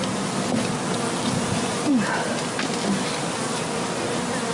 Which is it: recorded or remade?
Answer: recorded